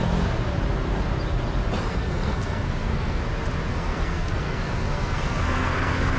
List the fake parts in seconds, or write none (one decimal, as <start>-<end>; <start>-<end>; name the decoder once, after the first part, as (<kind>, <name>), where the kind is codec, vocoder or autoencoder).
1.9-3.2 (codec, SNAC); 3.7-6.2

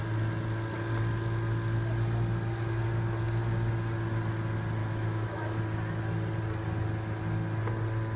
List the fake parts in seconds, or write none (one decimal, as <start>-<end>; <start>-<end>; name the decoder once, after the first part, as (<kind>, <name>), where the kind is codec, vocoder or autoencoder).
4.8-5.6 (autoencoder, DAC-VAE)

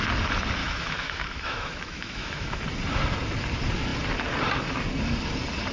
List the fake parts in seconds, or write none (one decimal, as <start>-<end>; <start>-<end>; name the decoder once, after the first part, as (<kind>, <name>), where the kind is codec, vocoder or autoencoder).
0.6-2.6 (autoencoder, DAC-VAE)

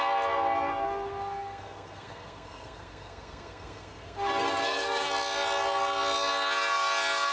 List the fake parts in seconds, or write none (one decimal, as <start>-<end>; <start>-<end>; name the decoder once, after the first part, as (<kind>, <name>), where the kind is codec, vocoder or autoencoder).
0.7-5.1 (codec, SNAC)